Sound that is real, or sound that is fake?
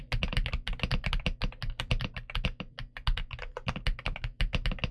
real